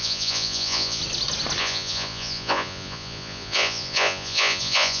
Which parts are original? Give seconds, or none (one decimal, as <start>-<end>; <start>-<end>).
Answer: 1.0-1.6

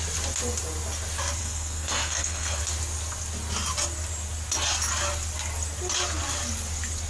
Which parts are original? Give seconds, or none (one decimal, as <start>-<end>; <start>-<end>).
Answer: 0.0-1.4; 2.6-7.1

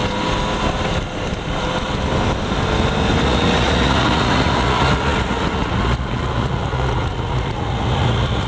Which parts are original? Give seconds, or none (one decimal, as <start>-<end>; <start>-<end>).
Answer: 0.0-3.2

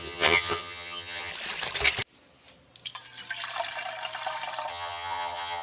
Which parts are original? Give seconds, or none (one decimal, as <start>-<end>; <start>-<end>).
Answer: 1.3-4.7